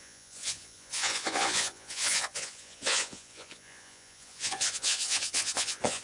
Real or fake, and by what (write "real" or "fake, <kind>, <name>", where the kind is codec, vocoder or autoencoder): fake, vocoder, Vocos